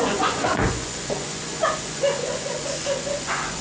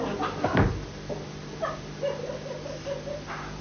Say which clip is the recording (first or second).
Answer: second